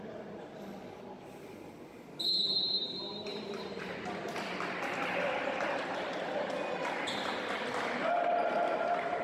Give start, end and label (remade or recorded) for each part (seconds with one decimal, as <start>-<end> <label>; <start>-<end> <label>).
0.0-3.3 recorded; 3.3-3.8 remade; 3.8-9.2 recorded